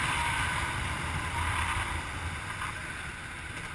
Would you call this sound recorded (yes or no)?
yes